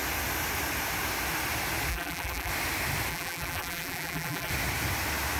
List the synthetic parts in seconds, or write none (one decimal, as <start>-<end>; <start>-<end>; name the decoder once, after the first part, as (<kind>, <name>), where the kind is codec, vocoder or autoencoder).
1.9-2.5 (vocoder, BigVGAN v2); 3.1-4.5